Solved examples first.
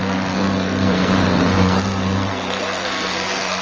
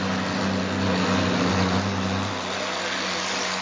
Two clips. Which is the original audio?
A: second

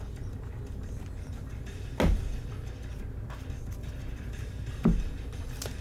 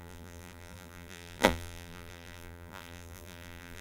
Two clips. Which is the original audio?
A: first